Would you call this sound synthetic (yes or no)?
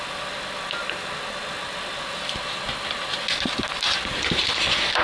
no